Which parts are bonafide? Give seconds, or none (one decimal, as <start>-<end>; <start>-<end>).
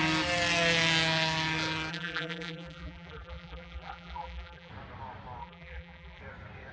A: 0.0-1.9; 4.7-5.4; 6.2-6.7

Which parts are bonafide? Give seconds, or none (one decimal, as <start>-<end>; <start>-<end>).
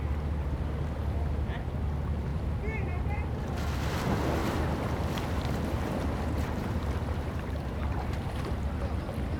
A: 0.0-2.3; 3.0-4.4; 8.8-9.4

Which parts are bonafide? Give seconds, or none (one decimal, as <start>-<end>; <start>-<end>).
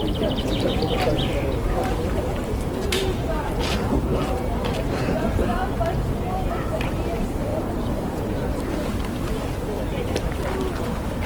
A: 1.3-2.2; 5.6-6.5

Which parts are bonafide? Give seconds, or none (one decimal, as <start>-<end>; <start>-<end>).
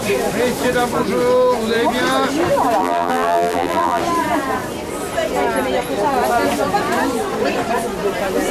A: 0.0-2.8; 4.0-8.5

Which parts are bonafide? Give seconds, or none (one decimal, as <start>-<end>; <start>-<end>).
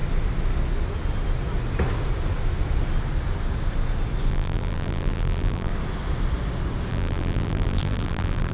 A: 0.0-4.3; 5.7-6.9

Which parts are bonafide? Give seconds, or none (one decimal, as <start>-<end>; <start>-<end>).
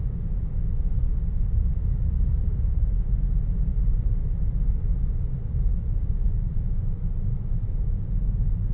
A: 0.0-2.3; 2.9-3.7; 7.9-8.7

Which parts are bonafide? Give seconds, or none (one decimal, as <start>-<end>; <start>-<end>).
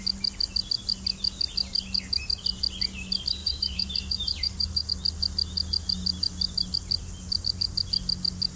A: 0.0-3.4; 4.9-8.6